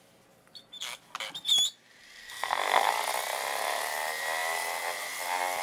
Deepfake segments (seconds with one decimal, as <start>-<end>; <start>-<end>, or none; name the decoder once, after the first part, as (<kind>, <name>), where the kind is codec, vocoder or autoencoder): 2.2-2.9 (codec, SNAC)